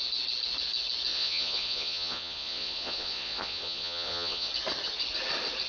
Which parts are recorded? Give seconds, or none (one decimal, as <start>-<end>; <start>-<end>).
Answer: 0.0-1.1; 4.5-5.7